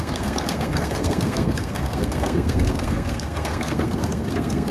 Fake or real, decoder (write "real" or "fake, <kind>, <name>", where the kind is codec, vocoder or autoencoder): fake, codec, SNAC